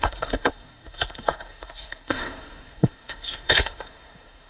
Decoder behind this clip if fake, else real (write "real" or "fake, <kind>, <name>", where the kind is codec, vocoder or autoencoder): fake, codec, SNAC